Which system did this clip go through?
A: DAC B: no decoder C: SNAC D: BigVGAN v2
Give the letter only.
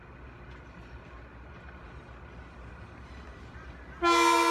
B